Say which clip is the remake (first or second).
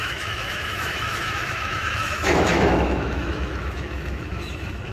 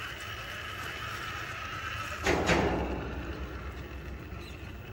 first